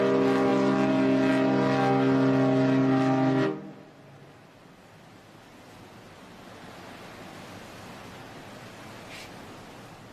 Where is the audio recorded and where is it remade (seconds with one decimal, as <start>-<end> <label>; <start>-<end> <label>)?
0.0-10.1 recorded